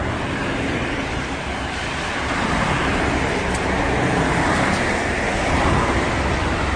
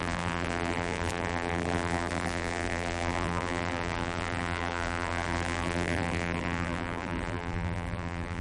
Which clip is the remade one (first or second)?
second